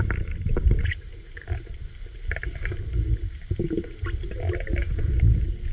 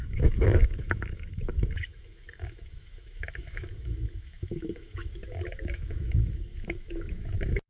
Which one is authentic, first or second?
first